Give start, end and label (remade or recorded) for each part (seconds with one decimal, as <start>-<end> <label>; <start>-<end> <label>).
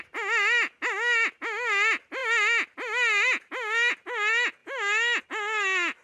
0.0-6.0 recorded